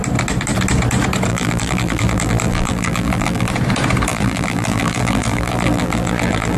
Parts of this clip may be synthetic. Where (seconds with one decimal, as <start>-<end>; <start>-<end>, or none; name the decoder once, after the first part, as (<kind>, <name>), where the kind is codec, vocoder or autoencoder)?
1.3-3.5 (vocoder, BigVGAN v2); 4.1-6.6